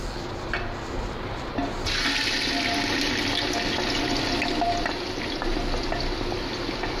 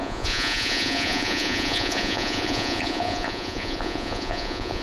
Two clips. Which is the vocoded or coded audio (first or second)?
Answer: second